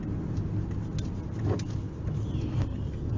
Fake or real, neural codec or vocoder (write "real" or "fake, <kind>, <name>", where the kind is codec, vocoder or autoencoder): real